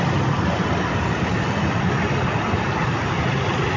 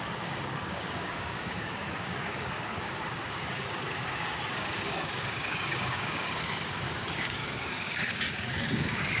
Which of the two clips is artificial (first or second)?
second